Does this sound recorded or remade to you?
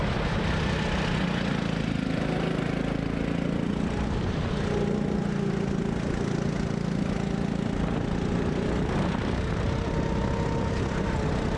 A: recorded